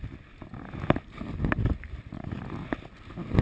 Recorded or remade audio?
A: recorded